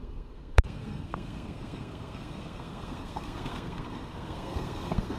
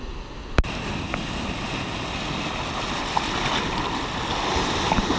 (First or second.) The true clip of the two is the second